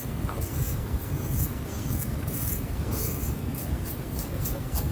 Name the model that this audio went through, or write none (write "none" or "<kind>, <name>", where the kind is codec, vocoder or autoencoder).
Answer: codec, SNAC